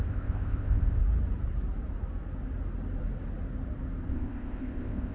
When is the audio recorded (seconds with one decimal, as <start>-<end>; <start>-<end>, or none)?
1.0-4.1